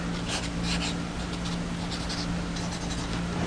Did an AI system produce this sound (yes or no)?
no